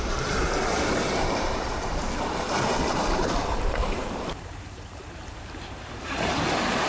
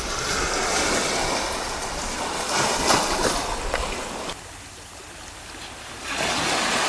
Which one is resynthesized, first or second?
first